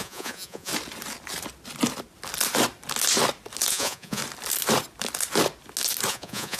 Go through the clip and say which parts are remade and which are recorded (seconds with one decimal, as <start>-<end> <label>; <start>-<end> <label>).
0.0-0.7 remade; 0.7-3.7 recorded; 3.7-4.2 remade; 4.2-6.1 recorded; 6.1-6.6 remade